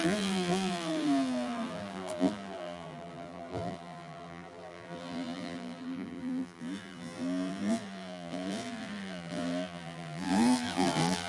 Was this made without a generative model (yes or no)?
no